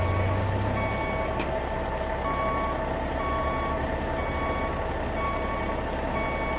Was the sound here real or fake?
real